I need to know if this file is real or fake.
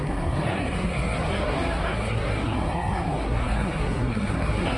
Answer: fake